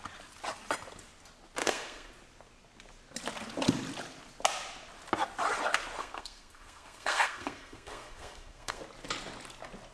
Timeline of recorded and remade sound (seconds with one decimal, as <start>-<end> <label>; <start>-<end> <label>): 0.0-1.6 recorded; 1.6-2.1 remade; 2.1-6.0 recorded; 6.0-8.8 remade; 8.8-9.9 recorded